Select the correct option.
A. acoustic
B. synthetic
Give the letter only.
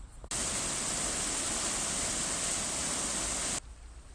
A